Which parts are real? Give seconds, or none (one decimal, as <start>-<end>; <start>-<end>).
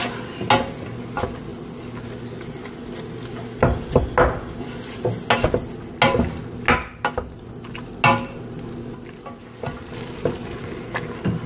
0.0-11.5